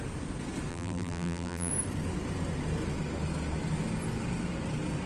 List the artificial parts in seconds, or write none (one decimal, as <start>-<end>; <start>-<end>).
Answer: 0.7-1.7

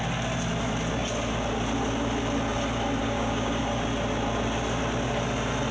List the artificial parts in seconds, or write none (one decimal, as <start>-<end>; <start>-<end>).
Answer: 3.0-3.6

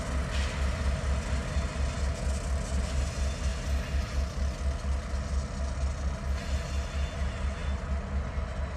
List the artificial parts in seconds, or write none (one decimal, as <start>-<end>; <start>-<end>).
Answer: none